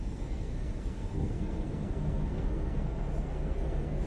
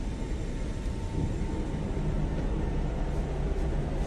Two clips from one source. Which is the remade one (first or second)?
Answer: first